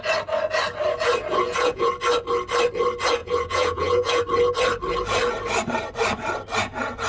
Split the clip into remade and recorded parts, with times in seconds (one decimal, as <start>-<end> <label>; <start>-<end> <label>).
0.0-1.3 recorded; 1.3-1.9 remade; 1.9-3.2 recorded; 3.2-4.2 remade; 4.2-7.1 recorded